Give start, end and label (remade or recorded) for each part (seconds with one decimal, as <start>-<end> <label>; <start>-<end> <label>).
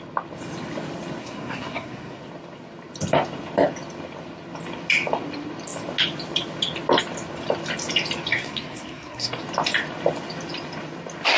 0.0-1.2 recorded; 1.2-2.2 remade; 2.2-8.3 recorded; 8.3-9.4 remade; 9.4-11.4 recorded